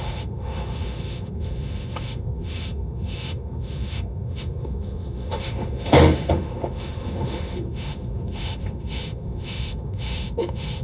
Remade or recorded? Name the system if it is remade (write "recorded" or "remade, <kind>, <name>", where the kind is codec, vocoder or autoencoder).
remade, autoencoder, DAC-VAE